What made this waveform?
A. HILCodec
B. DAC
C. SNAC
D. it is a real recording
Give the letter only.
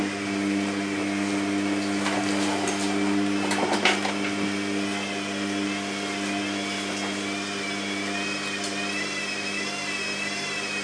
D